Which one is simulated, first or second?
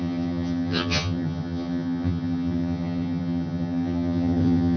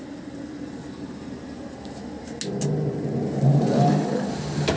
first